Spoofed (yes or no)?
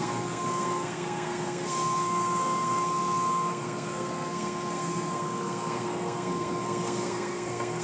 yes